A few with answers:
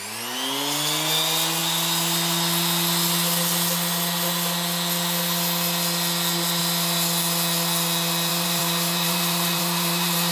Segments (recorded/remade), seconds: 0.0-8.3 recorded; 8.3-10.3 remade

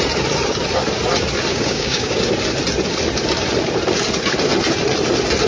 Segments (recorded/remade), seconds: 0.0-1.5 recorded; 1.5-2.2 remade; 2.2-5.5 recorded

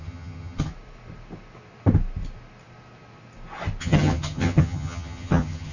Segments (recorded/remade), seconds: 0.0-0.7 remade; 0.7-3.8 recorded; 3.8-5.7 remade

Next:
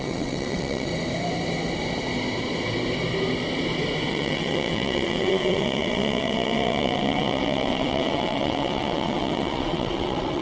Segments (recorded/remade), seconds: 0.0-0.9 remade; 0.9-4.1 recorded; 4.1-10.4 remade